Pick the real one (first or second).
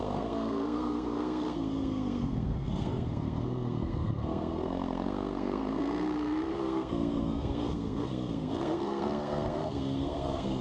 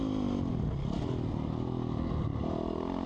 second